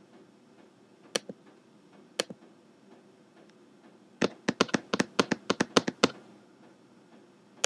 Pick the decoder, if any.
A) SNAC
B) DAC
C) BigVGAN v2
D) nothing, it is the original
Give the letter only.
D